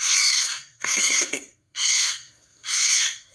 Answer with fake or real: fake